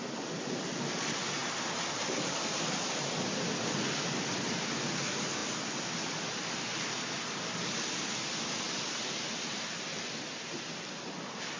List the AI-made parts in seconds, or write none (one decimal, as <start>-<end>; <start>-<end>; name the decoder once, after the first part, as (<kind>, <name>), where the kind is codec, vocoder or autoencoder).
none